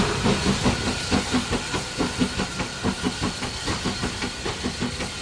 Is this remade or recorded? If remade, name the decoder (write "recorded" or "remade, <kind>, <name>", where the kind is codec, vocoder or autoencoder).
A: recorded